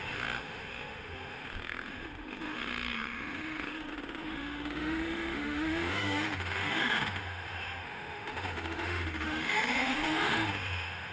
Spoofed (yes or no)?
yes